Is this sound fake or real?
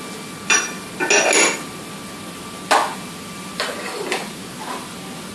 real